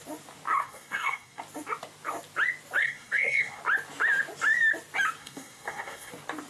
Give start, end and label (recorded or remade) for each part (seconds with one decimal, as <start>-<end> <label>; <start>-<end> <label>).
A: 0.0-0.6 recorded; 0.6-1.4 remade; 1.4-2.8 recorded; 2.8-3.6 remade; 3.6-5.2 recorded; 5.2-6.1 remade; 6.1-6.5 recorded